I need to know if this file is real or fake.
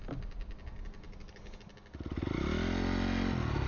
real